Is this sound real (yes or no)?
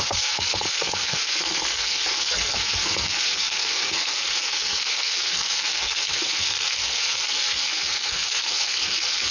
no